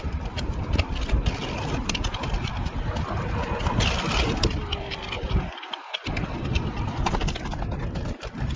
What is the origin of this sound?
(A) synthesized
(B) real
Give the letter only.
A